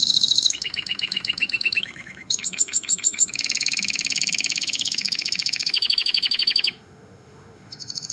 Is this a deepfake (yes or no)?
yes